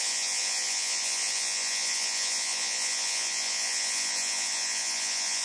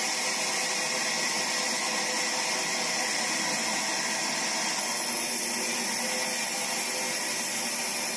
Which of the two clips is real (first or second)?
second